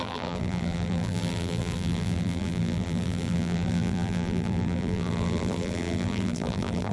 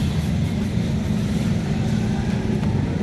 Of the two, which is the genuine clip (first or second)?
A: second